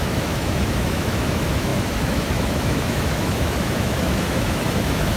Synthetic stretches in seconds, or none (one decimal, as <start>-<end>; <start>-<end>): 0.0-5.2